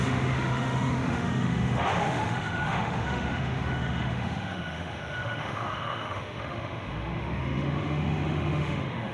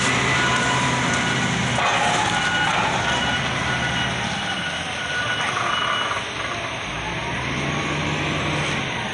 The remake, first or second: first